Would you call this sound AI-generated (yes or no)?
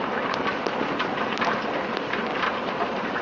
no